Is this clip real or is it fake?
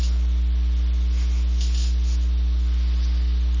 real